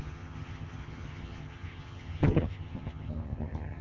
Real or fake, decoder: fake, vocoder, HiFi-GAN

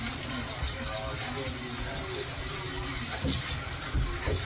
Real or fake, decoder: real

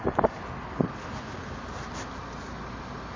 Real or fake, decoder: real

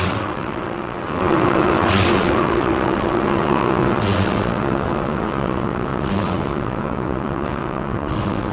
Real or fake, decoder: fake, vocoder, WaveNeXt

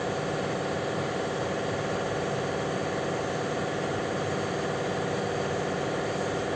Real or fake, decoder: real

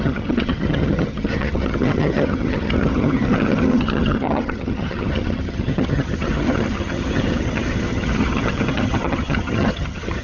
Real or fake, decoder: fake, vocoder, HiFi-GAN